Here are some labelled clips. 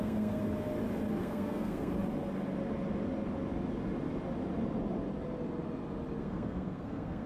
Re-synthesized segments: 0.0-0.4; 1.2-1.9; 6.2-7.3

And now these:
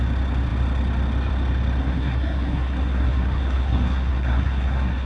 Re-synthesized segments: 1.8-5.1

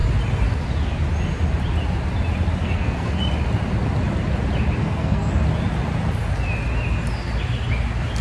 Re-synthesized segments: 2.6-3.2; 4.8-5.3